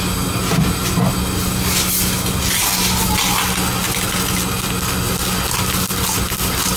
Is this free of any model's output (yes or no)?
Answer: yes